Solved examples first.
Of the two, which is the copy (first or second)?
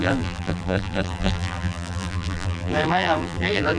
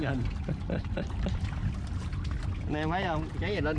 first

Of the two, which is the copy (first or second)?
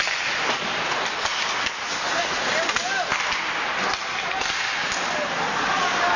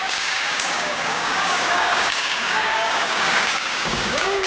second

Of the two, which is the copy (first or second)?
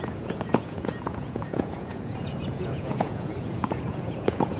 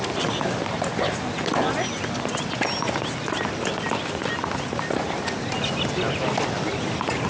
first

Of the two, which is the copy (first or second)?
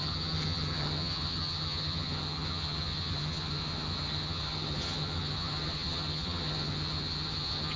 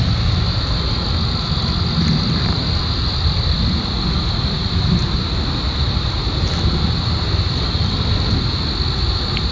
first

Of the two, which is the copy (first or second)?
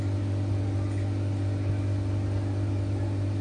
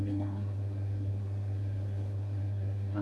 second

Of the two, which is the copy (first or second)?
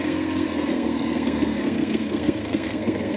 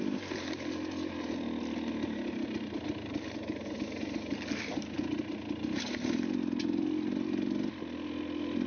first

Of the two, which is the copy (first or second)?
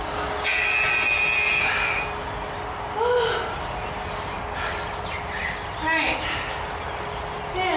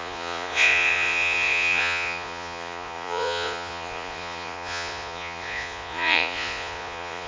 second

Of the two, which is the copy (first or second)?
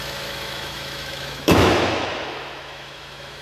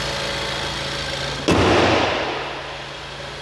first